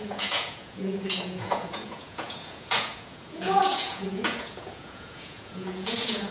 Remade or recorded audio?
remade